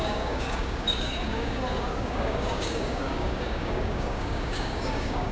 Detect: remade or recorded remade